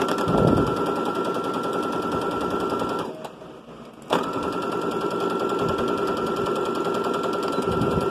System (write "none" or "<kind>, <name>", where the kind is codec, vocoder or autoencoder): none